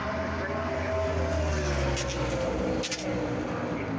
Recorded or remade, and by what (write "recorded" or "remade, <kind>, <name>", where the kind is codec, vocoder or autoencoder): recorded